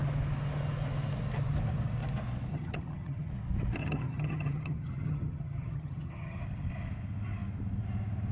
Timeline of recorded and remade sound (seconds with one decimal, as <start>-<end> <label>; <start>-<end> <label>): 0.0-2.5 recorded; 2.5-3.3 remade; 3.3-3.8 recorded; 3.8-6.4 remade; 6.4-8.3 recorded

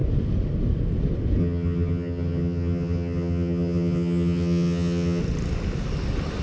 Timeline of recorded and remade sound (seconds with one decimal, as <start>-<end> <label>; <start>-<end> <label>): 0.0-1.4 recorded; 1.4-5.2 remade; 5.2-6.4 recorded

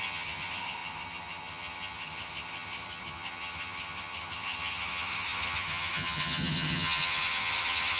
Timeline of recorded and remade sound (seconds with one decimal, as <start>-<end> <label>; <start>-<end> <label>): 0.0-8.0 remade

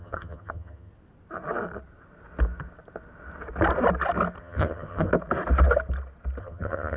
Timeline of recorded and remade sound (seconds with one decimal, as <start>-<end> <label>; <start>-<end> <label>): 0.0-0.9 remade; 0.9-4.4 recorded; 4.4-5.1 remade; 5.1-6.4 recorded; 6.4-7.0 remade